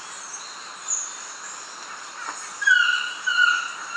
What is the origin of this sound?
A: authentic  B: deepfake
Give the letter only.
A